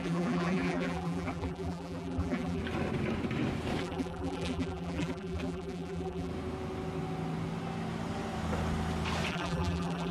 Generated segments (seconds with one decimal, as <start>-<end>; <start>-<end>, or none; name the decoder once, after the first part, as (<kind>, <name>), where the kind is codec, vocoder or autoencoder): 0.0-2.6 (vocoder, BigVGAN v2); 3.8-6.3; 9.3-10.1